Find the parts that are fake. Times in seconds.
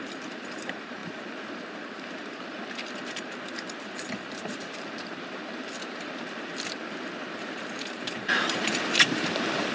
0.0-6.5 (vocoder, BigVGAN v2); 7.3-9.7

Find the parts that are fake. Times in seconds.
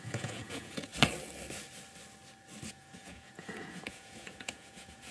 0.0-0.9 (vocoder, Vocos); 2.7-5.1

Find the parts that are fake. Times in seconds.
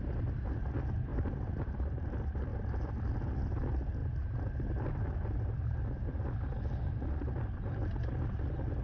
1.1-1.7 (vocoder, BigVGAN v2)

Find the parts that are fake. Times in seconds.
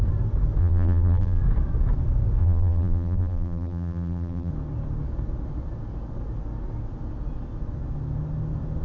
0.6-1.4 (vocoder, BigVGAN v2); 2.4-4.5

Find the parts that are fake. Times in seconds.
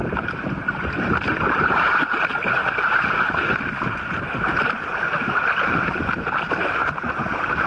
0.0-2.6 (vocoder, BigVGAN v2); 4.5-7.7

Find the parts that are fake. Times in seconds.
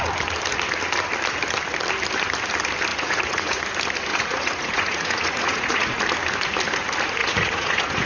2.9-3.6 (vocoder, Vocos); 4.1-6.0; 7.2-8.1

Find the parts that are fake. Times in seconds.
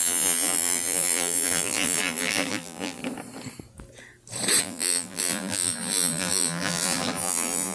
0.0-3.0 (vocoder, BigVGAN v2); 4.6-7.7